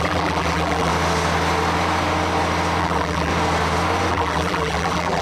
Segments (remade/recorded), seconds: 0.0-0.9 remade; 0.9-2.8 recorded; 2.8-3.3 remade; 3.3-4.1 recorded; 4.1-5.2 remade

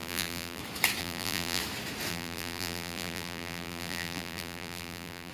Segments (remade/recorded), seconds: 0.0-0.6 remade; 0.6-1.0 recorded; 1.0-1.6 remade; 1.6-2.1 recorded; 2.1-5.3 remade

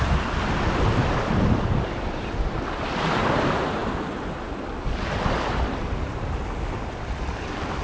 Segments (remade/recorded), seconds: 0.0-7.8 recorded

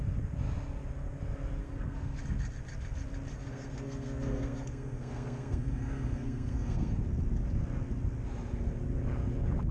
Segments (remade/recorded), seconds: 0.0-1.6 recorded; 1.6-2.2 remade; 2.2-3.3 recorded; 3.3-7.0 remade; 7.0-9.7 recorded

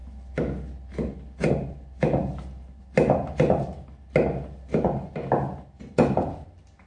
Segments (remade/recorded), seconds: 0.0-6.9 recorded